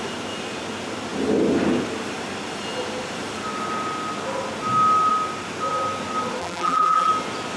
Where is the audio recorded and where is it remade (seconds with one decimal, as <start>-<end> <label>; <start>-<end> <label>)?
0.0-6.4 recorded; 6.4-7.1 remade; 7.1-7.6 recorded